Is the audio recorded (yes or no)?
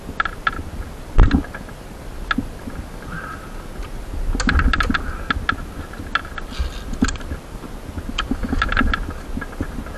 yes